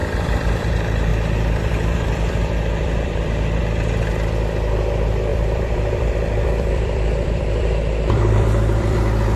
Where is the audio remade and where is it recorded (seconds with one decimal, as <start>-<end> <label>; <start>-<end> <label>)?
0.0-0.7 remade; 0.7-1.1 recorded; 1.1-3.6 remade; 3.6-5.3 recorded; 5.3-9.4 remade